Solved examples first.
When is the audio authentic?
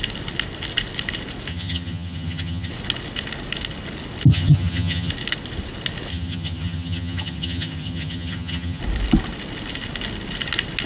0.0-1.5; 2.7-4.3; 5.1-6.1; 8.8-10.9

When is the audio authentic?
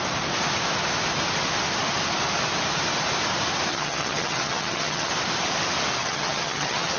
0.0-3.7; 5.1-6.0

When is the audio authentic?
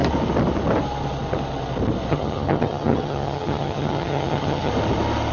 0.0-2.1; 4.7-5.3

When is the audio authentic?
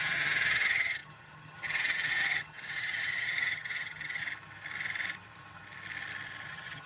4.2-6.5